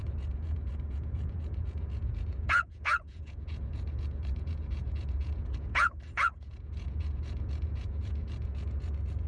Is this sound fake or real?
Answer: fake